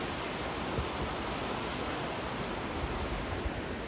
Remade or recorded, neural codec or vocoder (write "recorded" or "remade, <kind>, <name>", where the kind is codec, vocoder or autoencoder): recorded